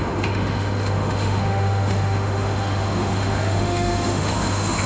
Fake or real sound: fake